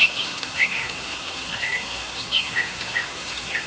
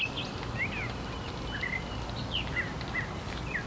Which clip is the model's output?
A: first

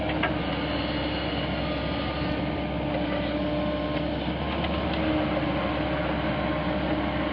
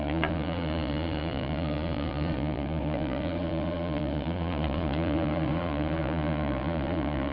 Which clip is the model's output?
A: second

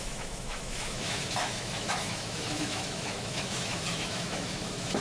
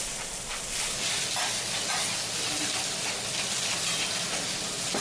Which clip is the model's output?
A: first